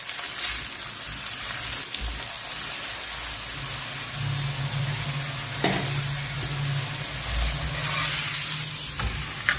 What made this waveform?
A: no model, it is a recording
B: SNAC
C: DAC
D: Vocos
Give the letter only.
A